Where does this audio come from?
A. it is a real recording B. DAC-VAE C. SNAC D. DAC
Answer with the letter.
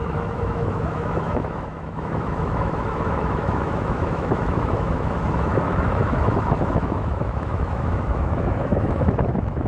B